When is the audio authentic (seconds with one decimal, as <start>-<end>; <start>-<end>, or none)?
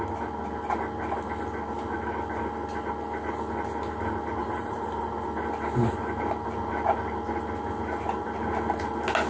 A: 0.0-4.4; 5.1-9.3